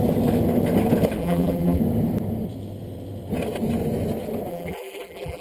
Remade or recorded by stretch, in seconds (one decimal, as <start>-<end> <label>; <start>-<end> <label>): 0.0-1.2 recorded; 1.2-1.8 remade; 1.8-4.5 recorded; 4.5-5.4 remade